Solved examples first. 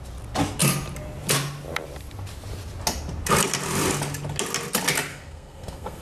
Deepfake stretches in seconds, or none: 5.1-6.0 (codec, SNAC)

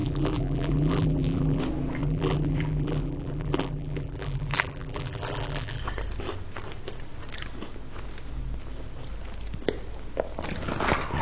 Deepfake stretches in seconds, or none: 0.0-1.6 (vocoder, BigVGAN v2); 2.0-5.8